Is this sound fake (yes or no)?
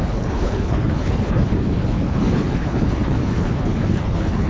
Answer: yes